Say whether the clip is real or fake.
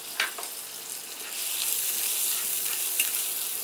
real